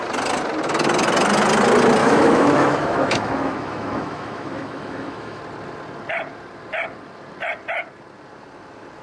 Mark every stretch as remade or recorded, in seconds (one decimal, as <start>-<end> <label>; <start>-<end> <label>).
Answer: 0.0-2.0 recorded; 2.0-5.4 remade; 5.4-9.0 recorded